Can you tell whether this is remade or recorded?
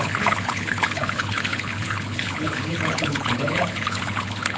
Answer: remade